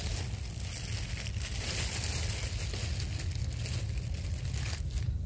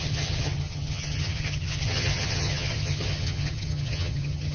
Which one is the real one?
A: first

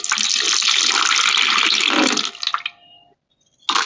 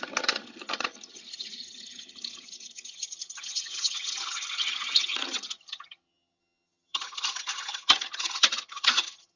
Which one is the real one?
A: first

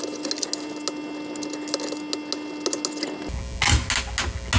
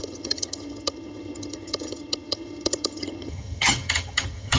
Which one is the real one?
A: first